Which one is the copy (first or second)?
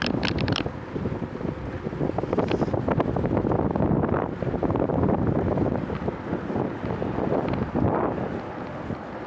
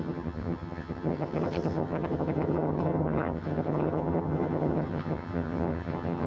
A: second